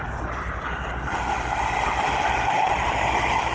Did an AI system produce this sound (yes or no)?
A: no